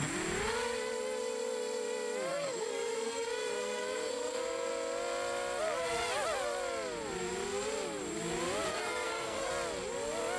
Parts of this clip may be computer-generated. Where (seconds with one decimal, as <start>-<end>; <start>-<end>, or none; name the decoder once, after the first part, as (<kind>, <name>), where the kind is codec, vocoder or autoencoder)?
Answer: 2.3-4.7 (codec, SNAC); 8.7-9.5